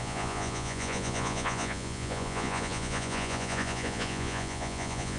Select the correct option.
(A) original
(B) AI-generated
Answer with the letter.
B